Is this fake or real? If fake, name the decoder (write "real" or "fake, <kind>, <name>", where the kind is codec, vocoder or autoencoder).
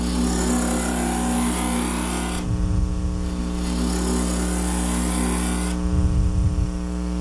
real